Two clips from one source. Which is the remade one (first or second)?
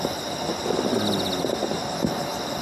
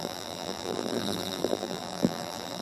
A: second